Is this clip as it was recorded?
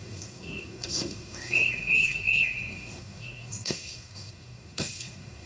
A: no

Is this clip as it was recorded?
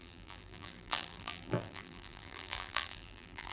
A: no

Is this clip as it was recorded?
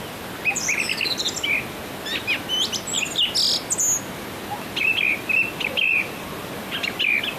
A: yes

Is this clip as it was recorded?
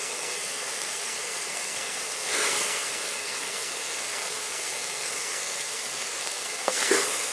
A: no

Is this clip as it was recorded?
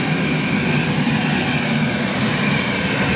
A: yes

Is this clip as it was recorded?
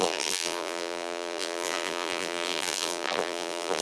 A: no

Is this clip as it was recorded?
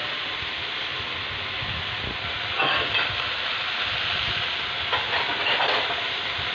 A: yes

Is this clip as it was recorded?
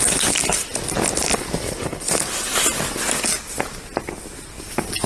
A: yes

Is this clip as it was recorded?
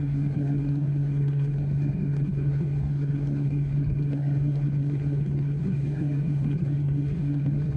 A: no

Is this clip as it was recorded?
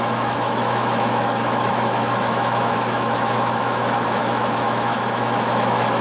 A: no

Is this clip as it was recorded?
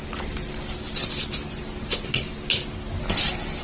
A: yes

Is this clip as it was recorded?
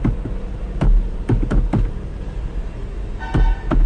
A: yes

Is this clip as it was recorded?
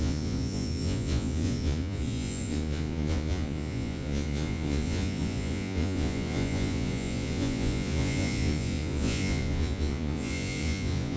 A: no